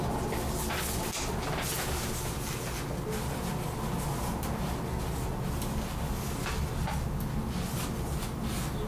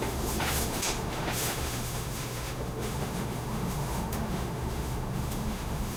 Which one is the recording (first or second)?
first